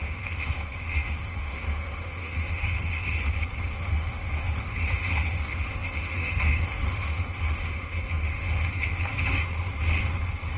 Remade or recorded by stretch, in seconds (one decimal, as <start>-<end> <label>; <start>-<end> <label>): 0.0-3.2 remade; 3.2-3.8 recorded; 3.8-9.1 remade; 9.1-10.6 recorded